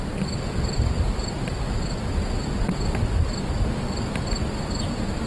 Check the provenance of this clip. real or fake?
real